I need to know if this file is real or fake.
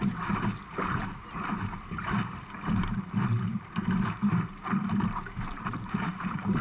fake